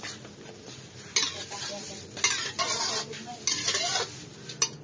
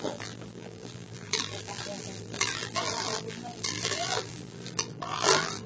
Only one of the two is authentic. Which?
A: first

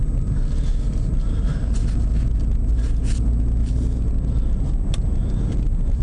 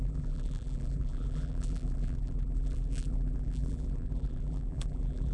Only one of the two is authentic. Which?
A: first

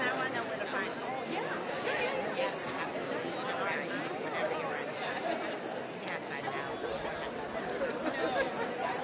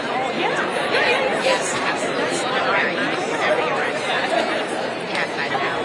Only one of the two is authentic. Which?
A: first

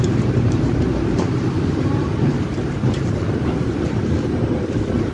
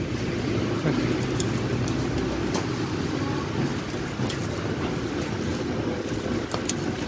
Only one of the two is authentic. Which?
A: second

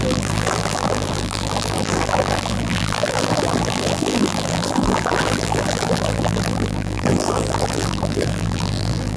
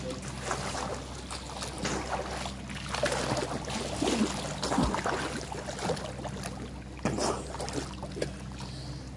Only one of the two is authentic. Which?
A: second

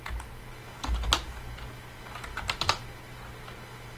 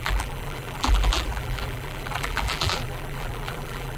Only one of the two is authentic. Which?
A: first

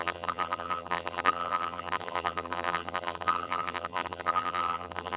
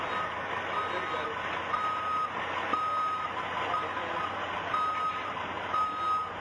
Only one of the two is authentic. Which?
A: second